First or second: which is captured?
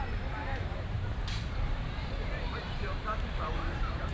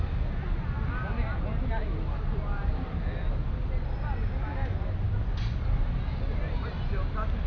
second